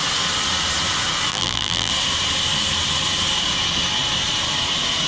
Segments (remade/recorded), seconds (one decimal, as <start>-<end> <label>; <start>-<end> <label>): 0.0-1.3 recorded; 1.3-1.9 remade; 1.9-5.1 recorded